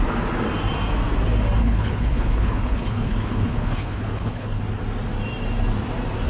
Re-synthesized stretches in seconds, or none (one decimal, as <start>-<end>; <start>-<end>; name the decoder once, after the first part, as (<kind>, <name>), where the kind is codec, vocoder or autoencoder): 1.6-4.6 (codec, HILCodec)